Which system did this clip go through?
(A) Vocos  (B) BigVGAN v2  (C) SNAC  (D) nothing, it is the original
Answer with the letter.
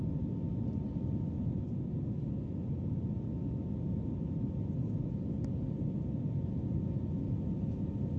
D